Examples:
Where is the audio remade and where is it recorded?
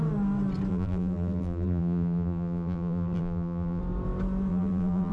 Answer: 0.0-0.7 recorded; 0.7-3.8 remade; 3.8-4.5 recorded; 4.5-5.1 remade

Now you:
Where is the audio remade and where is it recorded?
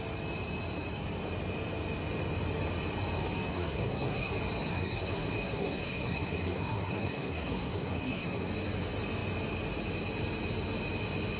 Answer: 0.0-3.5 recorded; 3.5-4.3 remade; 4.3-4.7 recorded; 4.7-8.5 remade; 8.5-11.4 recorded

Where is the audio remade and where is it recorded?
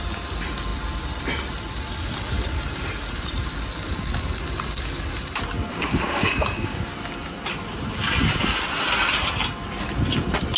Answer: 0.0-5.7 recorded; 5.7-6.8 remade; 6.8-10.6 recorded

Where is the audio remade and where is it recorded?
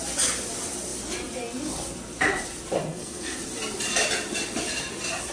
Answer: 0.0-2.9 recorded; 2.9-3.4 remade; 3.4-5.3 recorded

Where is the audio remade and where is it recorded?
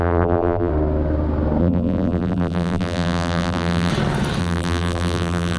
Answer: 0.0-0.7 remade; 0.7-1.6 recorded; 1.6-3.9 remade; 3.9-4.4 recorded; 4.4-5.6 remade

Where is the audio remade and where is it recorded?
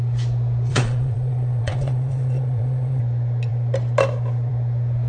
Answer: 0.0-0.7 recorded; 0.7-3.0 remade; 3.0-5.1 recorded